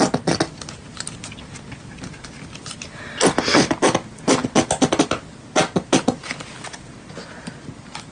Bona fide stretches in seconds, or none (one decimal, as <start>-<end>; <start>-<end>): 0.0-8.1